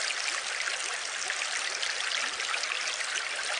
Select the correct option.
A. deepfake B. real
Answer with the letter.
B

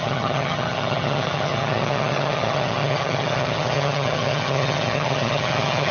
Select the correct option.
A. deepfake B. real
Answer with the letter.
A